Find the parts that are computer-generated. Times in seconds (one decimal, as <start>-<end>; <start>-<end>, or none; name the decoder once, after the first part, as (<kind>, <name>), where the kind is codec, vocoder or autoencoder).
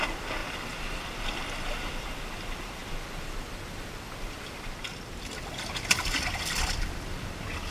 none